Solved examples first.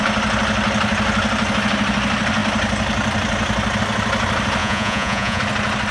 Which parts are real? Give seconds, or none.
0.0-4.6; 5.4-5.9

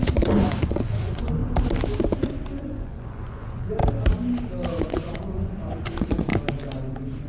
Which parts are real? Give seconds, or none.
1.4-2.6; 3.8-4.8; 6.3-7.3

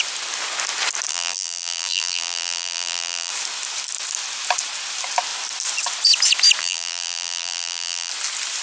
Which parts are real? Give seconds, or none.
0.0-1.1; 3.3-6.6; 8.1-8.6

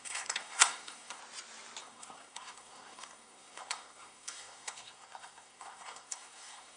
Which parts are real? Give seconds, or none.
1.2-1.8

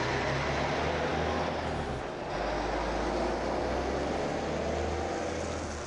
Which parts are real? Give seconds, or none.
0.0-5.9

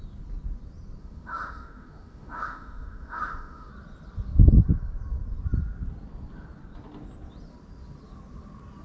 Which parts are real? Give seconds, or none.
0.0-1.0; 3.7-8.8